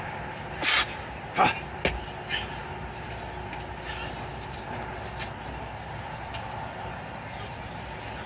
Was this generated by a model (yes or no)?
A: no